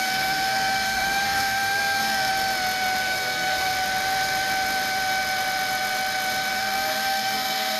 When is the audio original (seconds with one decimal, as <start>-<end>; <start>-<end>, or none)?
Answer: 2.3-3.0; 3.7-6.5